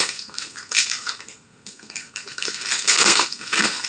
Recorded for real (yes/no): no